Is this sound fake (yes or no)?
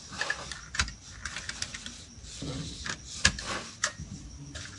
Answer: yes